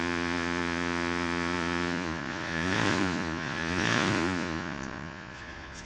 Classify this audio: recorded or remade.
remade